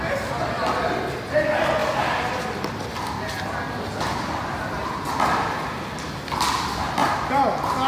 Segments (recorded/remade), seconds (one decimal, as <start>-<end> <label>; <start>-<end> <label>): 0.0-7.9 recorded